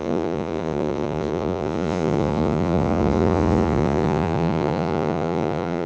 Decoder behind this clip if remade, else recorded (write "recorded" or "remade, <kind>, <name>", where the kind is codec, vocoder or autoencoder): remade, vocoder, Vocos